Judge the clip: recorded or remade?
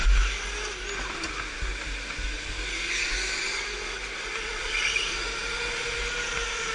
recorded